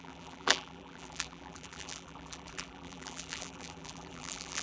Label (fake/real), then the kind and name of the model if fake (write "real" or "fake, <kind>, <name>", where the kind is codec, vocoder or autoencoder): fake, vocoder, BigVGAN v2